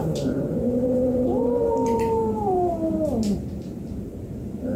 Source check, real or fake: fake